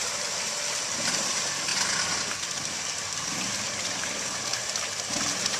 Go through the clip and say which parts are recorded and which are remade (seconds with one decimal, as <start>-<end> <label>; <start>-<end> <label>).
0.0-5.6 recorded